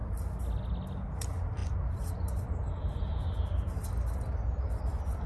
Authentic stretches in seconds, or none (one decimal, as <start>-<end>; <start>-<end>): 0.0-5.3